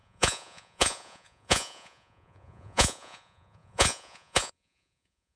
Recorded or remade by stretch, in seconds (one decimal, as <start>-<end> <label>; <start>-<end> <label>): 0.0-5.4 remade